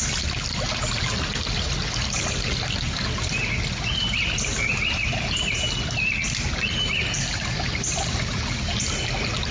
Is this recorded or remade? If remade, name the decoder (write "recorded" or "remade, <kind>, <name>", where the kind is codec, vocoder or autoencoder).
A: recorded